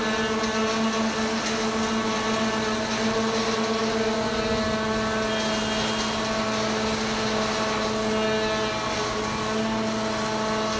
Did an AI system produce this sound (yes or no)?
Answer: no